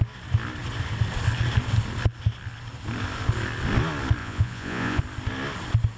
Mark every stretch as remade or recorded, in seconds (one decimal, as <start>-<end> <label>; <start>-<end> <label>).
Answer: 0.0-4.2 recorded; 4.2-5.0 remade; 5.0-6.0 recorded